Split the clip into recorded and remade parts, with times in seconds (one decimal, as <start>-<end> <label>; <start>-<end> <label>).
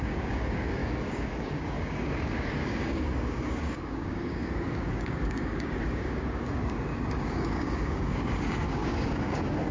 0.0-9.7 remade